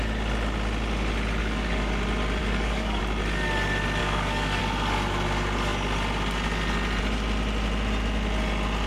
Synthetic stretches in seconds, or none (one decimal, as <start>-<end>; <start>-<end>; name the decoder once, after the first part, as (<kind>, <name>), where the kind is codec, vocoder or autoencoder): 1.4-1.9 (codec, DAC); 2.4-3.0; 4.0-4.6